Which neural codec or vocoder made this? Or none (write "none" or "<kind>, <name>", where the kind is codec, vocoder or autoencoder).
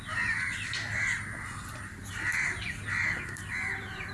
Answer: none